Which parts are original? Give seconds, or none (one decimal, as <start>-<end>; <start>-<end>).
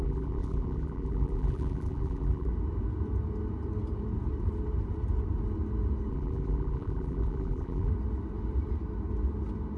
2.5-6.1; 7.9-9.8